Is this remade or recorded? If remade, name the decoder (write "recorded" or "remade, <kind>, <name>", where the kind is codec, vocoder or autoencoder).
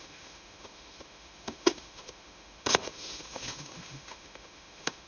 remade, autoencoder, DAC-VAE